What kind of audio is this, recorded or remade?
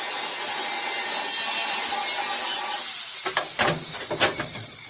recorded